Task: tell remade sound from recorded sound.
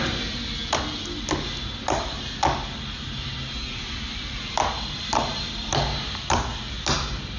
recorded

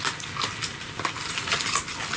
recorded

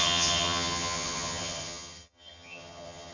remade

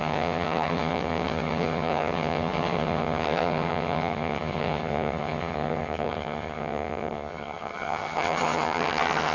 remade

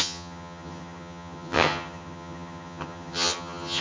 remade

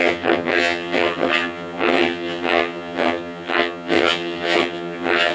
remade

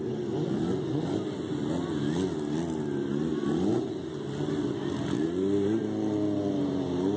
recorded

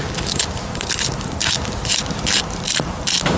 recorded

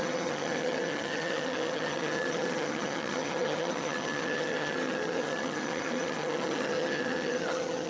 remade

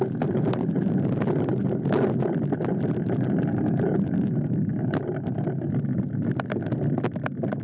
recorded